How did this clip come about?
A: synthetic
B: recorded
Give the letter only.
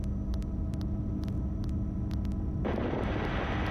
B